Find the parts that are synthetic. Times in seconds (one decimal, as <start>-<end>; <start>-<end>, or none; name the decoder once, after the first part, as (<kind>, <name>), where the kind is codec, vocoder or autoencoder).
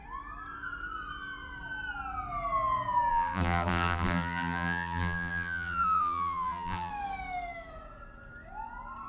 3.1-6.9 (vocoder, BigVGAN v2)